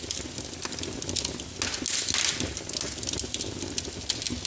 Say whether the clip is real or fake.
real